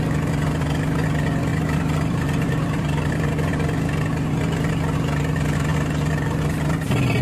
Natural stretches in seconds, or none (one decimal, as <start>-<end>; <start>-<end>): 0.0-1.5; 3.1-7.2